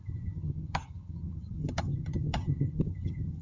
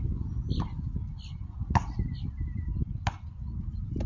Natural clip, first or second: second